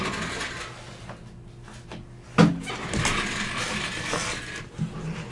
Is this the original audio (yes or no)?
yes